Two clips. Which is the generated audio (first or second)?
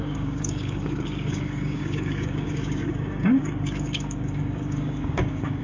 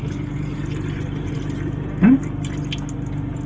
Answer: first